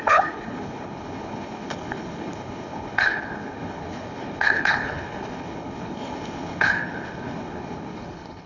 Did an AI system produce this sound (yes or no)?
yes